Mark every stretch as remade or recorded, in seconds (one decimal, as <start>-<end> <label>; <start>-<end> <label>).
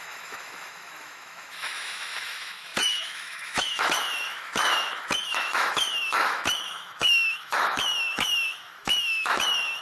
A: 0.0-9.8 remade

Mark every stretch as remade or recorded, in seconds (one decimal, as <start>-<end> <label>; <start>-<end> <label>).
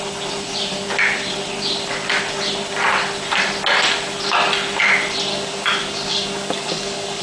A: 0.0-5.3 recorded; 5.3-7.2 remade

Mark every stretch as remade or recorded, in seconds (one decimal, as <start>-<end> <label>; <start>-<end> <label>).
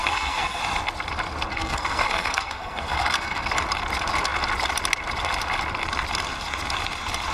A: 0.0-0.6 remade; 0.6-1.5 recorded; 1.5-3.5 remade; 3.5-7.3 recorded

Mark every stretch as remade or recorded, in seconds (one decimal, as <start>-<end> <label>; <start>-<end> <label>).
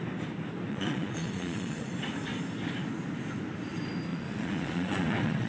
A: 0.0-0.7 recorded; 0.7-1.9 remade; 1.9-4.1 recorded; 4.1-5.5 remade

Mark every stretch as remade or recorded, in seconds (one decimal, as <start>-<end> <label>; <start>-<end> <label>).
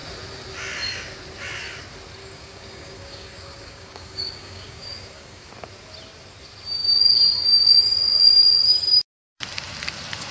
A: 0.0-2.2 recorded; 2.2-5.5 remade; 5.5-10.3 recorded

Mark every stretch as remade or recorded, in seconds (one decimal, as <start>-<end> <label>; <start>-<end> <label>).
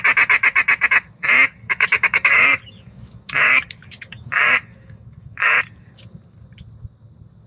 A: 0.0-1.6 recorded; 1.6-5.6 remade; 5.6-7.5 recorded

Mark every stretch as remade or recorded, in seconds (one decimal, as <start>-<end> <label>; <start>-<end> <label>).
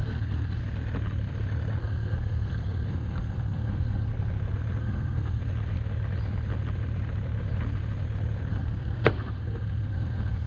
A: 0.0-0.6 remade; 0.6-1.8 recorded; 1.8-4.1 remade; 4.1-4.8 recorded; 4.8-5.4 remade; 5.4-8.5 recorded; 8.5-10.5 remade